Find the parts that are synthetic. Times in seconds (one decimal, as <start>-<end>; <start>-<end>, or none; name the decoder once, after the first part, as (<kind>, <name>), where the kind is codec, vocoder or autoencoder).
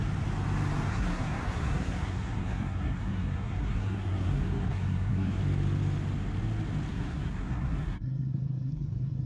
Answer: 0.9-5.4 (codec, SNAC); 6.9-9.3